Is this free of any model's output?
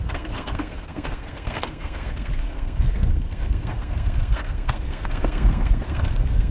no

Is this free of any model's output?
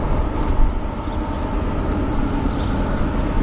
yes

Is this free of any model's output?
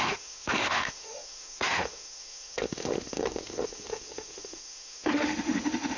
no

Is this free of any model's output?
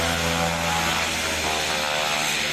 yes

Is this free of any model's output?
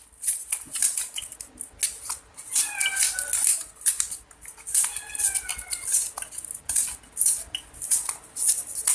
yes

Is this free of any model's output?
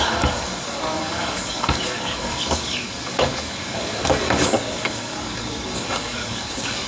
no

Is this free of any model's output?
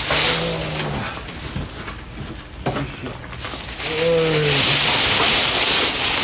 yes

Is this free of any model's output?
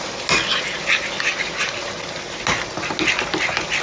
yes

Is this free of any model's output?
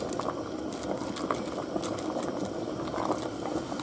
yes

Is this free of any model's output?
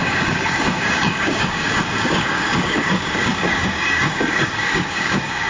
no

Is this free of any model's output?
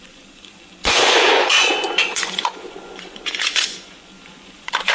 no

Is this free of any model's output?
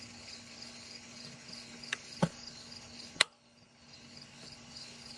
no